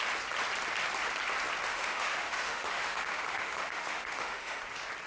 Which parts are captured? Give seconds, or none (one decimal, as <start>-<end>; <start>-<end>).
0.0-1.7; 4.6-5.1